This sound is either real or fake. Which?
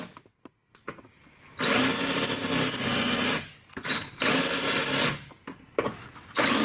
real